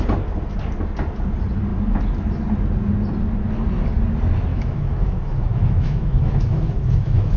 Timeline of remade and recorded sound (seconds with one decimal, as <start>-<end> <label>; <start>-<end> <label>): 0.0-4.5 recorded; 4.5-7.4 remade